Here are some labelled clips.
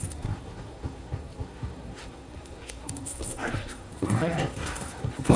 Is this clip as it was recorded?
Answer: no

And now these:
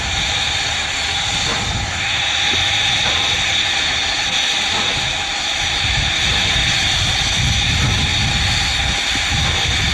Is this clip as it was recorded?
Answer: yes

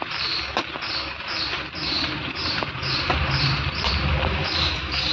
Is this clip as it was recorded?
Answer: yes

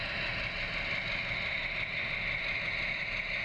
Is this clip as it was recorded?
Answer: yes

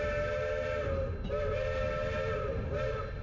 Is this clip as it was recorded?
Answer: yes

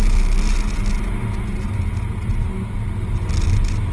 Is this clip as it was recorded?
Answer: yes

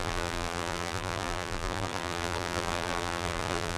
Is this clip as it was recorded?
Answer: no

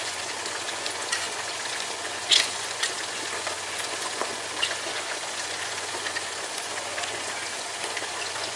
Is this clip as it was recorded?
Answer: no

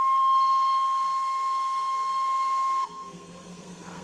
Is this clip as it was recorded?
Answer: no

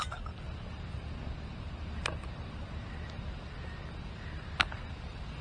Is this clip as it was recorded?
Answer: yes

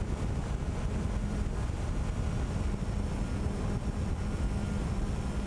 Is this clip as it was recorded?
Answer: yes